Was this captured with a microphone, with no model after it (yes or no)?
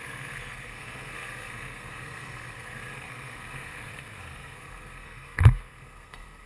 no